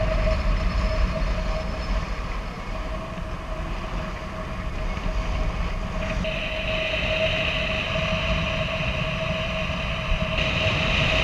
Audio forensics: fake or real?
real